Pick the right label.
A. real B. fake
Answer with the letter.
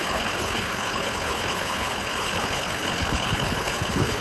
B